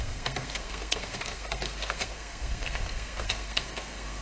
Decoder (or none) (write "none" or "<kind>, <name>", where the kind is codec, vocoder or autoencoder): codec, SNAC